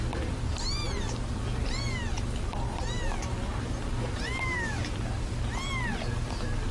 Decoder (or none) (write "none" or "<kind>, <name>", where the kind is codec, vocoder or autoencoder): none